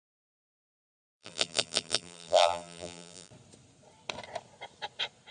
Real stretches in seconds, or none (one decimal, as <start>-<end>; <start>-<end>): 0.0-0.9; 3.3-5.3